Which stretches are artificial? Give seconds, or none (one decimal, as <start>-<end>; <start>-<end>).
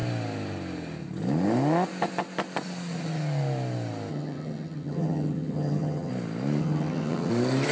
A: 4.1-6.1; 6.6-7.3